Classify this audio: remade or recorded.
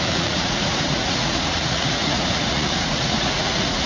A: remade